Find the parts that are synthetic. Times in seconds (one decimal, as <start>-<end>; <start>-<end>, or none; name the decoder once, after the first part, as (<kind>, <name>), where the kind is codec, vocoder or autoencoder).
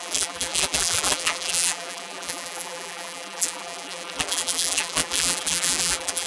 0.0-6.3 (vocoder, BigVGAN v2)